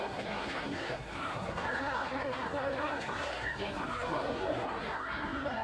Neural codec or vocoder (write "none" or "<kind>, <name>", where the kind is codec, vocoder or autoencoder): codec, SNAC